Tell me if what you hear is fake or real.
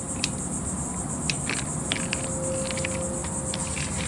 real